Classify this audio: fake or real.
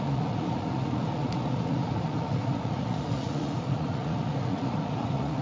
fake